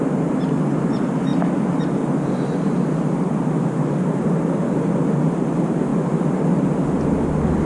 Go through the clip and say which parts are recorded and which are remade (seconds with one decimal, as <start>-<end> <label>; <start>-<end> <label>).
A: 0.0-7.7 recorded

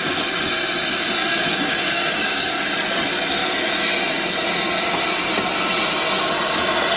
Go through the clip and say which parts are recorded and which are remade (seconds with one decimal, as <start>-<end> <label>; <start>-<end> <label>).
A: 0.0-1.2 recorded; 1.2-2.5 remade; 2.5-7.0 recorded